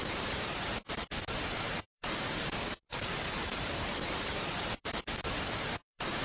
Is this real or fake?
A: fake